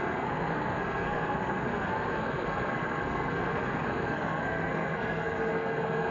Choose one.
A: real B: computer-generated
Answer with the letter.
B